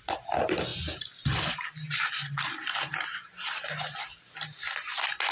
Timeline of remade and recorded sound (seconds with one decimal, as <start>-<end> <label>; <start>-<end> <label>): 0.0-5.3 recorded